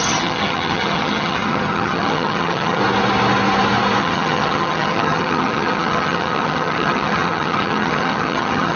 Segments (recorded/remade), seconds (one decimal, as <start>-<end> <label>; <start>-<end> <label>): 0.0-2.8 remade; 2.8-4.0 recorded; 4.0-8.8 remade